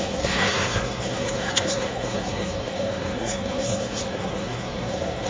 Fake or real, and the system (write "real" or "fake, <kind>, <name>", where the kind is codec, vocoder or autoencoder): fake, codec, SNAC